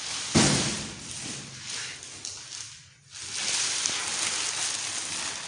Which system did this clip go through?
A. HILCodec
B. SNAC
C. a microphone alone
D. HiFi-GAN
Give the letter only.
C